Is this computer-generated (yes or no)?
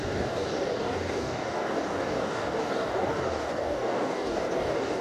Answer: yes